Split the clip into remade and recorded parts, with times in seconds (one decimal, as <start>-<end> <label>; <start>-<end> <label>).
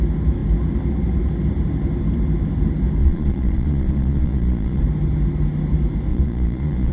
0.0-3.0 recorded; 3.0-4.8 remade; 4.8-6.1 recorded; 6.1-6.9 remade